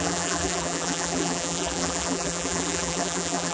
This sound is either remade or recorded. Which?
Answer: remade